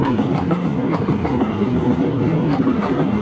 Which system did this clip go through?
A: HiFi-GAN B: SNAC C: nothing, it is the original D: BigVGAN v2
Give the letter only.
B